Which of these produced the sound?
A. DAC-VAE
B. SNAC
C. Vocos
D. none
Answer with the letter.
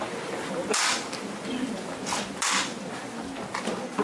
D